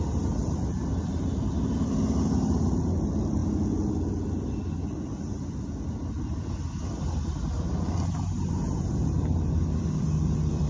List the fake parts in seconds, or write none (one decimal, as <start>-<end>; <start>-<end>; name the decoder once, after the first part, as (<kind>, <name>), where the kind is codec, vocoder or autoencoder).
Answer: none